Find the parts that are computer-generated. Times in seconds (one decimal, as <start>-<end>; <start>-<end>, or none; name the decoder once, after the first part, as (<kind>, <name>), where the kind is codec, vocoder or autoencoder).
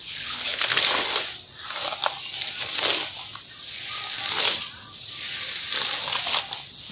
0.0-0.8 (codec, HILCodec)